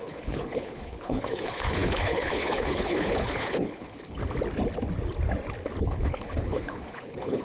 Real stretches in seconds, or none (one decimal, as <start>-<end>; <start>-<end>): 4.2-5.8